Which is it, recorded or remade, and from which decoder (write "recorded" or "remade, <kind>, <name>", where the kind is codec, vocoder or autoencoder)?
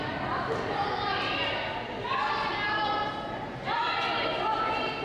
recorded